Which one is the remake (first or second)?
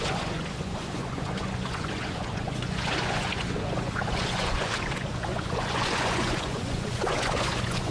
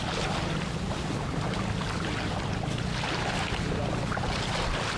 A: first